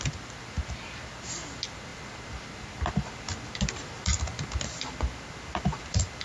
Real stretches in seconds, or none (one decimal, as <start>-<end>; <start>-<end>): 0.0-6.2